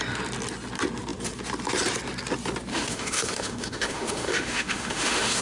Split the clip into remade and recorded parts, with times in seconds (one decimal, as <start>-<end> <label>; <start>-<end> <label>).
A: 0.0-2.7 recorded; 2.7-5.4 remade